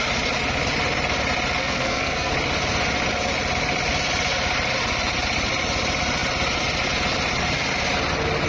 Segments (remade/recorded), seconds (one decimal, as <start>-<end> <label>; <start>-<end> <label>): 0.0-1.6 recorded; 1.6-2.3 remade; 2.3-8.5 recorded